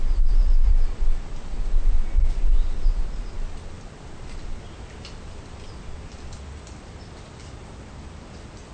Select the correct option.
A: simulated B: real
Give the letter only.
B